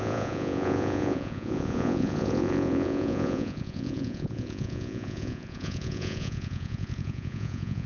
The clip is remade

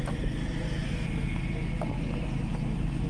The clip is recorded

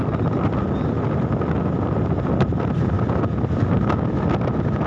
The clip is recorded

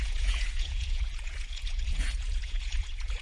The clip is remade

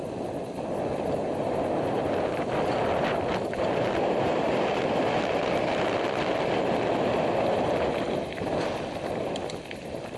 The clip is recorded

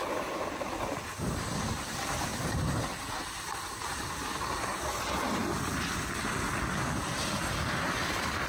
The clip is recorded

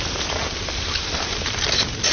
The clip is recorded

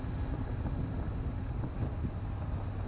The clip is recorded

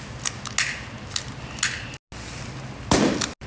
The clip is recorded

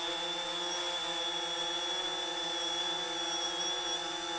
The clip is recorded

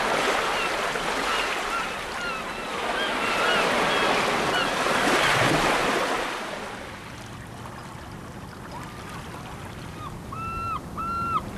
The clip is recorded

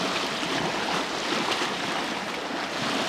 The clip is recorded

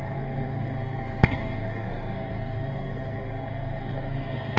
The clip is remade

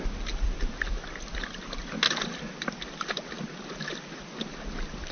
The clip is recorded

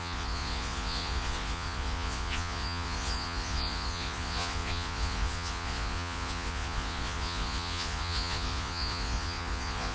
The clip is remade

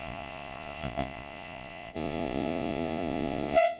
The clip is remade